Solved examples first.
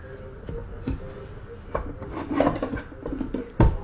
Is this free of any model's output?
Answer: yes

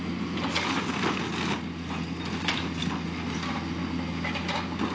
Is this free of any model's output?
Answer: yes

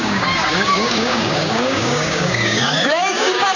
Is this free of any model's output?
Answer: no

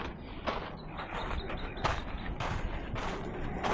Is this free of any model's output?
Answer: yes